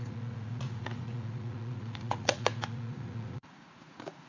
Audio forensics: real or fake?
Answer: fake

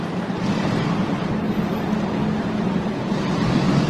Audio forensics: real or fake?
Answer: real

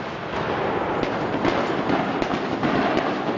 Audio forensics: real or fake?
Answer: real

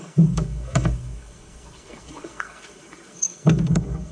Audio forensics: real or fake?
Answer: fake